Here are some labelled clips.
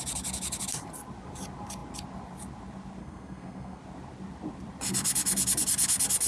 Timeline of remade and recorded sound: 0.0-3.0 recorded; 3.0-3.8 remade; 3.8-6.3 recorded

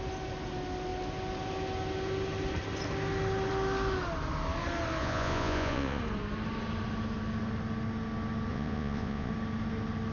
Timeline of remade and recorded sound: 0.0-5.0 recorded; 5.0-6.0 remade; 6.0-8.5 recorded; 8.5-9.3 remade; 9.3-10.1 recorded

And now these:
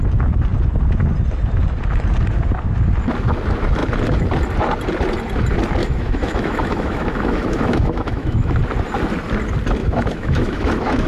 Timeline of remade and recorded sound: 0.0-5.8 recorded; 5.8-8.6 remade; 8.6-9.8 recorded; 9.8-11.1 remade